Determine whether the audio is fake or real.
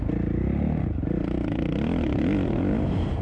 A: real